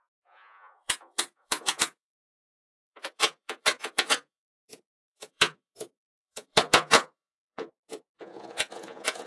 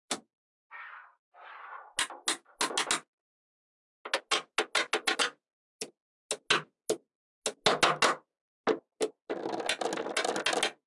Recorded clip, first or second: second